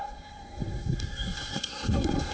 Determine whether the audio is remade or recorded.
remade